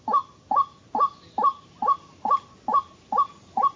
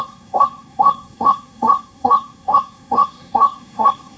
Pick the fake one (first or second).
second